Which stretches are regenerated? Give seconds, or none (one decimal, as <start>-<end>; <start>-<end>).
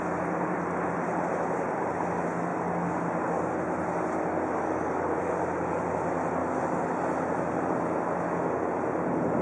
none